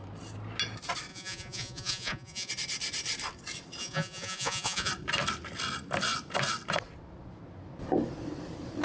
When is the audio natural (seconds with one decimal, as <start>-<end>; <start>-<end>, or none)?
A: 0.0-1.1; 2.5-3.8; 4.9-8.8